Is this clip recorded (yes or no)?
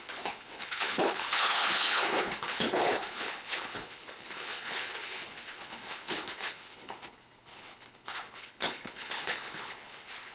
no